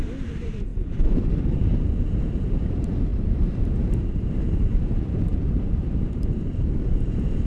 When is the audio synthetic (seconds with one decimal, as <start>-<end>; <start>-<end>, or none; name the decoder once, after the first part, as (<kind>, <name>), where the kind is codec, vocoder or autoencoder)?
0.0-7.5 (vocoder, BigVGAN v2)